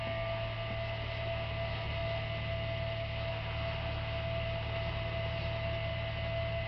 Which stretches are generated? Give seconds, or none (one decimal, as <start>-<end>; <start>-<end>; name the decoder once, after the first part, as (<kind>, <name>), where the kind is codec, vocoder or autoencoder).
none